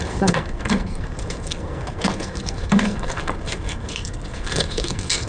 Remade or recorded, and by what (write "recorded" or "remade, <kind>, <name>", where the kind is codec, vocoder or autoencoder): remade, codec, SNAC